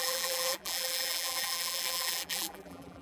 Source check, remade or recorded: remade